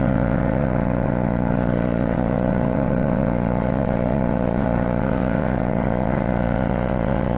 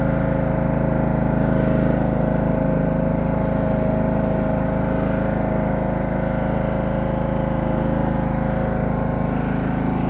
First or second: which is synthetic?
first